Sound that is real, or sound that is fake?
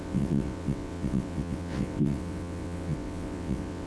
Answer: fake